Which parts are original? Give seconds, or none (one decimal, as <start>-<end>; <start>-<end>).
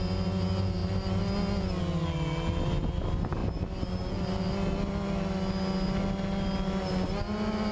0.0-7.7